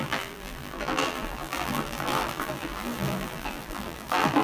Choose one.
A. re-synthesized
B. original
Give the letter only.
A